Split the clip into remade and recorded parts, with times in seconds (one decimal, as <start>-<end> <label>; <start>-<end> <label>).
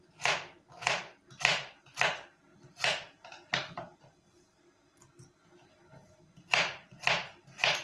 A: 0.0-7.8 recorded